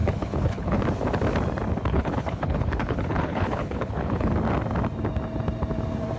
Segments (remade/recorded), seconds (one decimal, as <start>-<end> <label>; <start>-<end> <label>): 0.0-0.8 remade; 0.8-1.9 recorded; 1.9-4.3 remade; 4.3-6.2 recorded